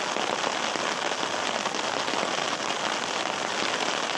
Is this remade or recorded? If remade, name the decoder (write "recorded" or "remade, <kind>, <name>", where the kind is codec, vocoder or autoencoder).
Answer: recorded